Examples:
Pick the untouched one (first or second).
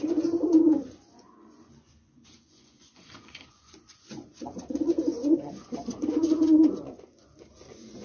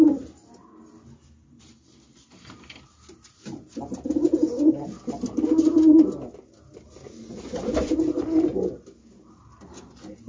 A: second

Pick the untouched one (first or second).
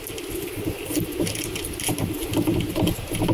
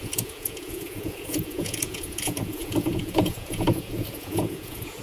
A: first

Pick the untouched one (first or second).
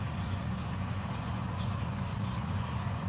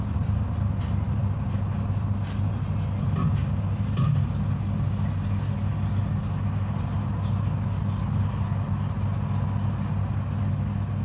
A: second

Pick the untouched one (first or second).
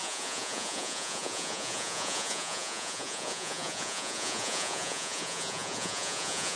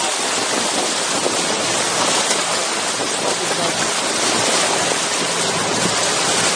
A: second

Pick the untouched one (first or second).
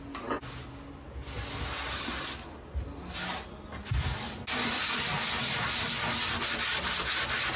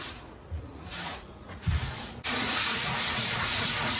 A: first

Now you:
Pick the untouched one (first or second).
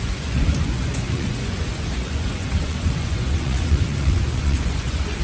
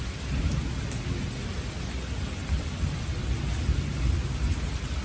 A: second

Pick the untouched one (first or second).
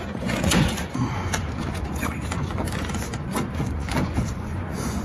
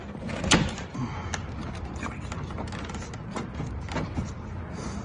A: second